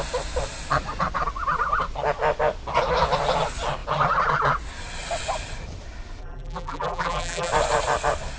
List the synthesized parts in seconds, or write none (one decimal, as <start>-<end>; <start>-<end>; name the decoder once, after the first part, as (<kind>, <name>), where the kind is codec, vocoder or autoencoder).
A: 6.2-7.5 (vocoder, BigVGAN v2)